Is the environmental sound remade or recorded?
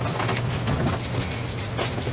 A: recorded